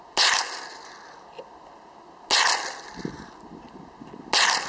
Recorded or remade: recorded